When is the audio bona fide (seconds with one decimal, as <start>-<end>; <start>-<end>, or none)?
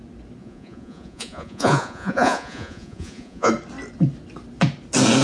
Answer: 0.0-0.4; 3.5-5.2